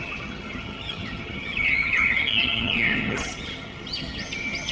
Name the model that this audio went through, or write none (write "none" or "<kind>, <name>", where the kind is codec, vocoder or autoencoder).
vocoder, HiFi-GAN